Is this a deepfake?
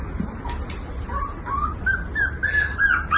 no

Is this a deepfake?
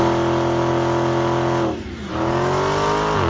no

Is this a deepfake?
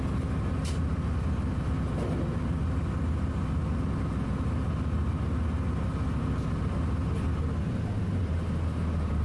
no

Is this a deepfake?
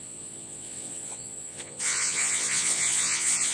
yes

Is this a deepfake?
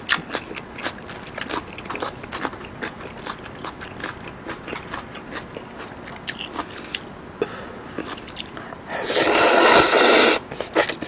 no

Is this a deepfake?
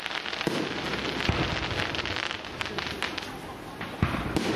no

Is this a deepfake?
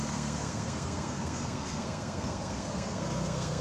yes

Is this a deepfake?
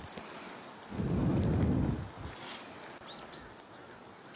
no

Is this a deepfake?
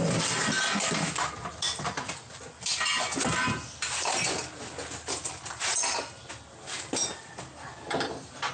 no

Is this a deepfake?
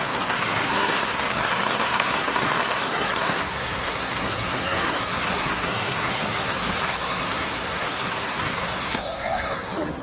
yes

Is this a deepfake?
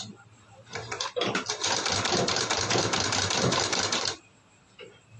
yes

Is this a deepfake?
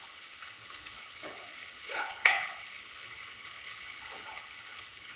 yes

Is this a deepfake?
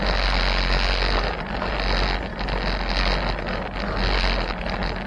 no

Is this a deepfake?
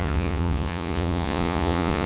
yes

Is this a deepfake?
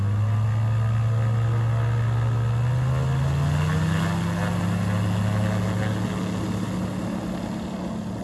no